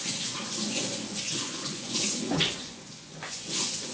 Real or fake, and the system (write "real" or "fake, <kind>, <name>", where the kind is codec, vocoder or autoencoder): fake, vocoder, Vocos